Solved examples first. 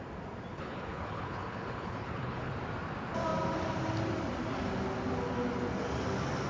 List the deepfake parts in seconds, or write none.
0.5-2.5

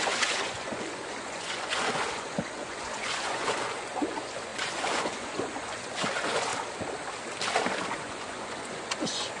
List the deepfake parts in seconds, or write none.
0.0-6.5; 7.9-9.4

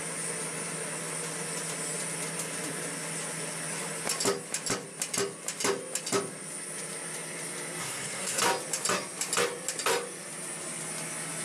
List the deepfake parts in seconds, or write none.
7.8-8.4

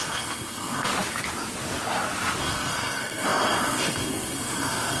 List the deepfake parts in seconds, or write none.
0.0-0.9; 2.4-5.0